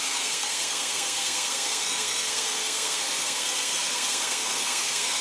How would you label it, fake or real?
fake